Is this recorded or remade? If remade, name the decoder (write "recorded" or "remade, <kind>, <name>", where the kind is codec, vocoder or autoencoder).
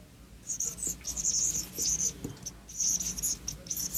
recorded